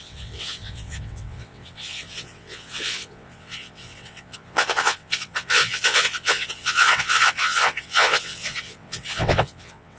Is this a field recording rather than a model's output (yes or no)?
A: no